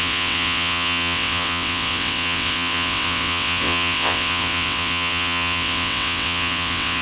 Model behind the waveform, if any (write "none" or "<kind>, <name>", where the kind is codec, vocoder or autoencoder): vocoder, WaveNeXt